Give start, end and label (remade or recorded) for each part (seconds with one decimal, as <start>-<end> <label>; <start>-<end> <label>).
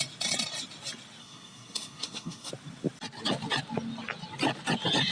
0.0-1.2 recorded; 1.2-2.5 remade; 2.5-5.1 recorded